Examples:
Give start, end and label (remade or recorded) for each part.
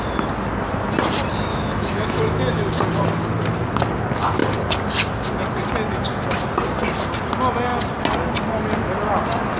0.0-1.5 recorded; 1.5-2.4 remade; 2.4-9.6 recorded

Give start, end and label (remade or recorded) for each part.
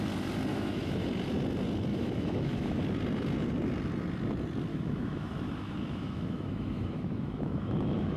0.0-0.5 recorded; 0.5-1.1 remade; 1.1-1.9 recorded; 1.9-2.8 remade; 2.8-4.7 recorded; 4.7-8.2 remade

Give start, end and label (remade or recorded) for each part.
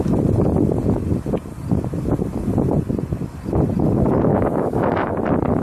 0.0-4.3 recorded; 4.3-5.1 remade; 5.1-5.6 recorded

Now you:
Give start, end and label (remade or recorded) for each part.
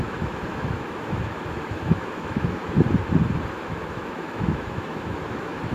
0.0-2.6 remade; 2.6-3.5 recorded; 3.5-5.7 remade